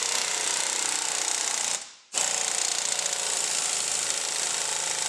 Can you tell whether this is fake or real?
real